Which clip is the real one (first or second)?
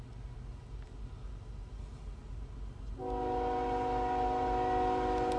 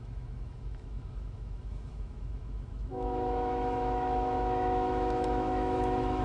first